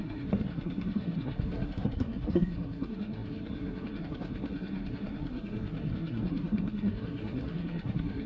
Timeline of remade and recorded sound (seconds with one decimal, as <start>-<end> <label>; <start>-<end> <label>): 0.0-8.3 remade

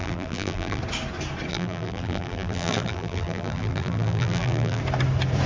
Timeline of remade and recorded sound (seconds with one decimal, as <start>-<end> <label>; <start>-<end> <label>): 0.0-0.8 remade; 0.8-1.5 recorded; 1.5-4.8 remade; 4.8-5.5 recorded

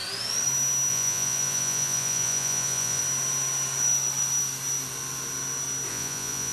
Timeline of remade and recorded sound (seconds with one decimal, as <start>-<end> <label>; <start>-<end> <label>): 0.0-0.9 recorded; 0.9-3.0 remade; 3.0-5.9 recorded; 5.9-6.5 remade

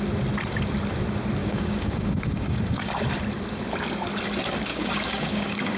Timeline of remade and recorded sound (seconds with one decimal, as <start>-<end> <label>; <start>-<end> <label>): 0.0-1.4 recorded; 1.4-3.0 remade; 3.0-4.7 recorded; 4.7-5.8 remade

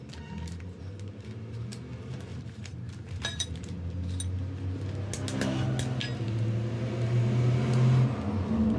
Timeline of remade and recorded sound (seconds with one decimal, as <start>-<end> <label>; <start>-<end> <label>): 0.0-2.3 recorded; 2.3-3.9 remade; 3.9-8.8 recorded

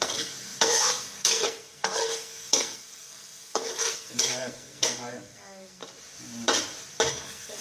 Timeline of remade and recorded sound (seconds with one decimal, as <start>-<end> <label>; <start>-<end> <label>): 0.0-5.8 remade; 5.8-7.1 recorded; 7.1-7.6 remade

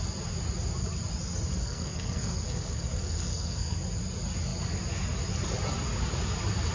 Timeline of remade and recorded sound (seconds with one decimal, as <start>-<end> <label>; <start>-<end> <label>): 0.0-1.6 recorded; 1.6-3.8 remade; 3.8-6.7 recorded

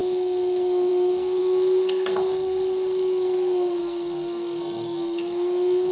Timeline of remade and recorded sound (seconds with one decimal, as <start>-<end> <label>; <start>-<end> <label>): 0.0-5.9 remade